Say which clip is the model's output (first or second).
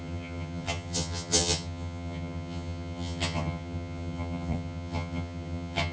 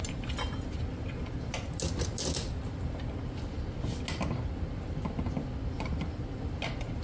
first